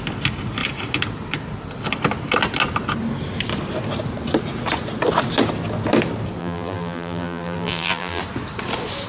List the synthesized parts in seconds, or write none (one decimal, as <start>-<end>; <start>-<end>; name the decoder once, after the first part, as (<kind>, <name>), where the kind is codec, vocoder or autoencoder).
6.4-8.2 (vocoder, BigVGAN v2)